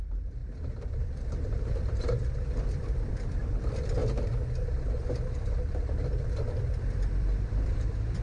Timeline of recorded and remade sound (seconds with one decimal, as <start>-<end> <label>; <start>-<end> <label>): 0.0-4.0 remade; 4.0-4.7 recorded; 4.7-8.2 remade